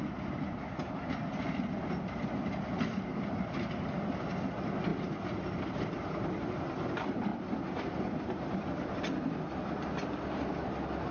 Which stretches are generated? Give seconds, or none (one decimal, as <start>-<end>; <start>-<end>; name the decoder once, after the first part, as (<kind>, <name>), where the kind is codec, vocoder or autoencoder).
none